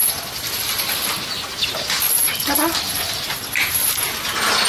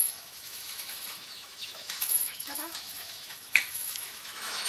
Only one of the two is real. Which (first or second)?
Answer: first